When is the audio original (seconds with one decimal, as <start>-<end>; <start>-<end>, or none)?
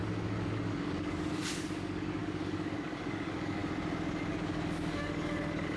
3.6-4.3